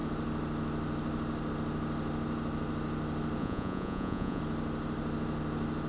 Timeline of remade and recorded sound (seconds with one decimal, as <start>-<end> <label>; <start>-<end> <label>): 0.0-3.4 recorded; 3.4-4.4 remade; 4.4-5.9 recorded